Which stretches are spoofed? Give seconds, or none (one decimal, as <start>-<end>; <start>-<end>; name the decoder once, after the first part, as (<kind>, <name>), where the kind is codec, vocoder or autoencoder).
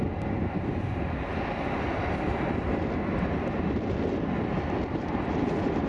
none